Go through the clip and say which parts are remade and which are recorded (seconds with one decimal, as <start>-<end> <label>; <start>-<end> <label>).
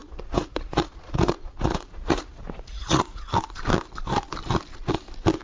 0.0-3.2 remade; 3.2-5.4 recorded